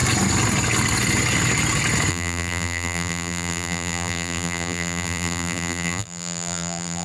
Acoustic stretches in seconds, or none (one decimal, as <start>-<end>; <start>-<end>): 0.0-2.1